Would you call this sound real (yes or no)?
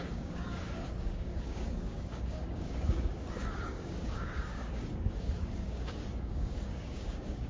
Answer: no